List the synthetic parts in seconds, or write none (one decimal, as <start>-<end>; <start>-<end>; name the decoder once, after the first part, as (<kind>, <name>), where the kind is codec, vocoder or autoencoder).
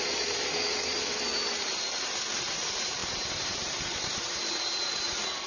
0.0-1.3 (vocoder, BigVGAN v2); 2.4-5.5